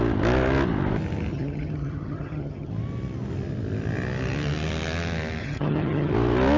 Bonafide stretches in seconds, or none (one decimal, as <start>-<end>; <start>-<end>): 0.0-1.3; 2.7-5.4; 6.1-6.6